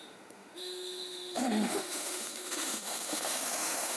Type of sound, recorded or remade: remade